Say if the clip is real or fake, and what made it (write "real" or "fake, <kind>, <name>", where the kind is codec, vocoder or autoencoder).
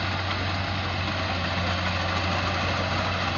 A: real